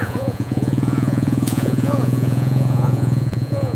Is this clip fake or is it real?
fake